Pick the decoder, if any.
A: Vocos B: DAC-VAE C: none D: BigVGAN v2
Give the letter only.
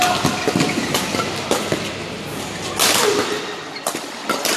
C